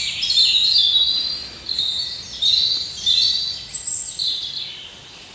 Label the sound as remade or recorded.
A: recorded